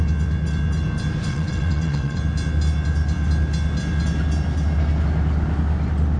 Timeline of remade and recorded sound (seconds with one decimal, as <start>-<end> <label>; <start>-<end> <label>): 0.0-1.3 recorded; 1.3-2.2 remade; 2.2-6.2 recorded